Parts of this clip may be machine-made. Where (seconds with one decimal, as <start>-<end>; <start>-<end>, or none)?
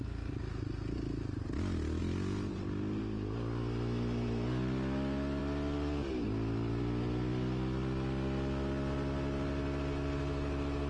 none